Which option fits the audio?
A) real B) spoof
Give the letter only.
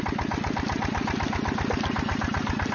A